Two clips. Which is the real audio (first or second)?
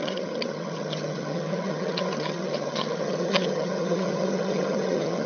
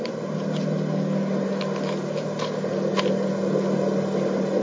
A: second